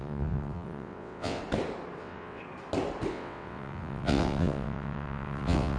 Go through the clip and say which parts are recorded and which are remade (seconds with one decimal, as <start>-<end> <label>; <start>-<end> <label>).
0.0-1.4 remade; 1.4-2.0 recorded; 2.0-2.4 remade; 2.4-3.1 recorded; 3.1-5.8 remade